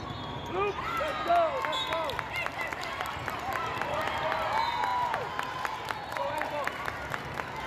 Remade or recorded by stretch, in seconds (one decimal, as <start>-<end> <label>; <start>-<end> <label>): 0.0-7.7 recorded